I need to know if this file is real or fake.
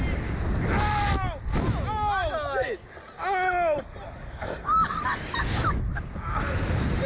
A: real